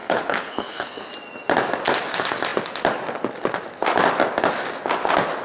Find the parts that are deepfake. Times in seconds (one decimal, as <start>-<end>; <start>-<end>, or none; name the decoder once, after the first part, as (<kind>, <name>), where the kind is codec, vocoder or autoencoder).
0.0-1.1 (codec, HILCodec)